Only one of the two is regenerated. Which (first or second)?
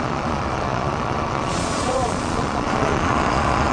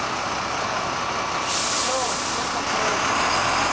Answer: first